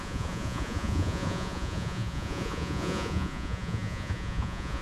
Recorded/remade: remade